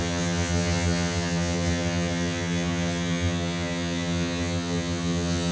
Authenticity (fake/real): fake